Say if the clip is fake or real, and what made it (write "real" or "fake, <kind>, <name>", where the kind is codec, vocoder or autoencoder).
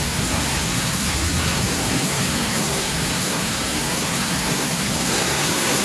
fake, codec, SNAC